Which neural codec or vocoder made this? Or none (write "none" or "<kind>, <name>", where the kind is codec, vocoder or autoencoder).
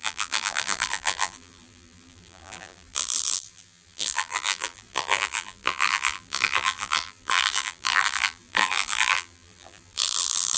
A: vocoder, BigVGAN v2